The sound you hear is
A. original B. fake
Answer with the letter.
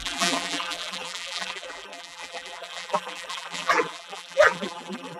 B